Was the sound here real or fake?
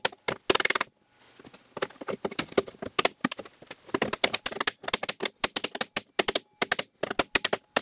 real